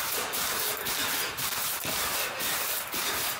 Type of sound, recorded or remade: remade